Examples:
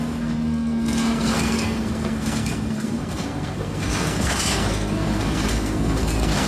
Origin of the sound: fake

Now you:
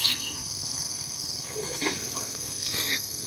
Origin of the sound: fake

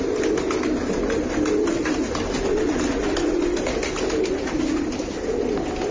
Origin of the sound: real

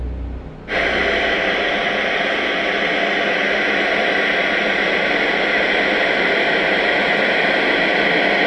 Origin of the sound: real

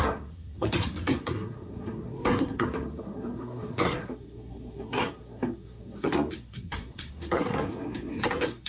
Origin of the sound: fake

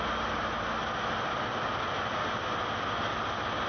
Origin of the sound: real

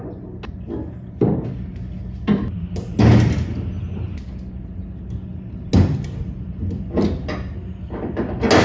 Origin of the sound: real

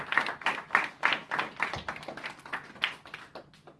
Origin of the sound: real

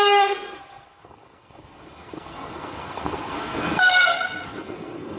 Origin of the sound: fake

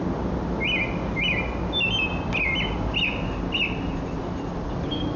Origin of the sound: real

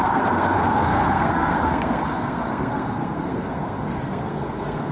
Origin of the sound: fake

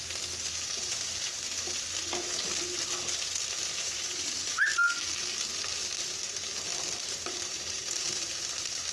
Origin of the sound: real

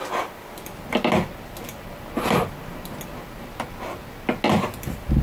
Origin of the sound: real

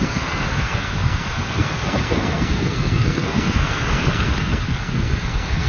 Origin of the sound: fake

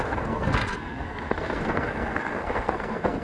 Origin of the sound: fake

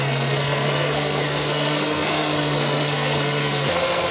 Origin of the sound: fake